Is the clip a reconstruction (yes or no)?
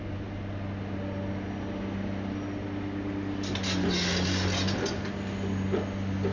no